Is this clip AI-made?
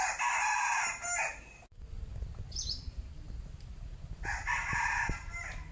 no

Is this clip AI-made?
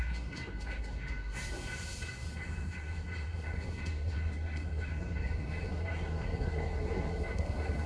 yes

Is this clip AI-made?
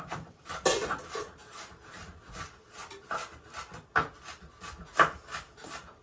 no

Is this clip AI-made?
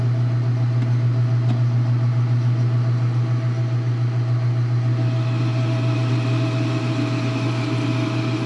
no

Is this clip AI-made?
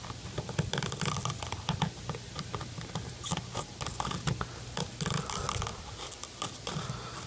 no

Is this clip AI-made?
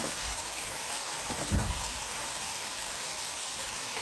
yes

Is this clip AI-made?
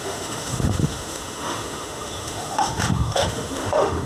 yes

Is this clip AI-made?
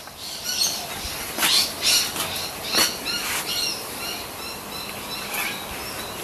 no